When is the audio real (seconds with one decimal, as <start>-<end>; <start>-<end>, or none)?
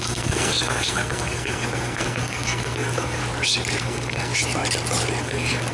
3.2-3.8; 4.3-5.2